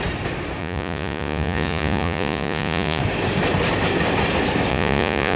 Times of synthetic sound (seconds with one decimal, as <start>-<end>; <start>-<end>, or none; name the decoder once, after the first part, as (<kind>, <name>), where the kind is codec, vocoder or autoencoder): 0.6-3.0 (vocoder, Vocos); 4.7-5.4